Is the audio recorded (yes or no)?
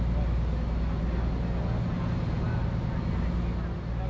yes